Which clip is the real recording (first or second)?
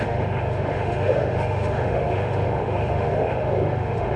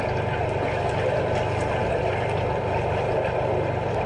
second